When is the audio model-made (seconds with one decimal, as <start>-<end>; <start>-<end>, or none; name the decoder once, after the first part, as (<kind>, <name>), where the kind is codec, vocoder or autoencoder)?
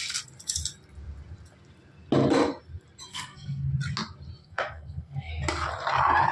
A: 3.1-3.7 (codec, SNAC); 4.4-5.3